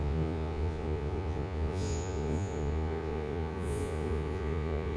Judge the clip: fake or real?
fake